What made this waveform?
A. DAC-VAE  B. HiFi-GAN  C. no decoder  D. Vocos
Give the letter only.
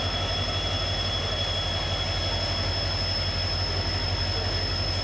C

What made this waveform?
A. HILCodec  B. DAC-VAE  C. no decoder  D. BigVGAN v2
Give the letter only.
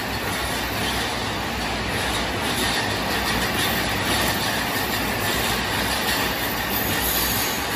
C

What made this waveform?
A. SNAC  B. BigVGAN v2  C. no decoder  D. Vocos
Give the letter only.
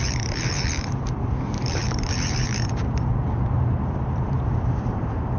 B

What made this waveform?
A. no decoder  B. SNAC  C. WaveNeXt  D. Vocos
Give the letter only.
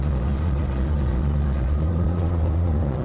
D